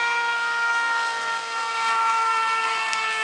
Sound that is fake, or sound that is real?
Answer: fake